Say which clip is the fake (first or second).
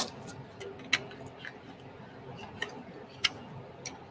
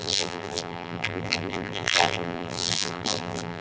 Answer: second